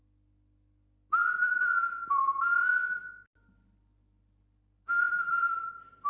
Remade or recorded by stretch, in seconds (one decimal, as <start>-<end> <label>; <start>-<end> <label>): 0.0-6.1 recorded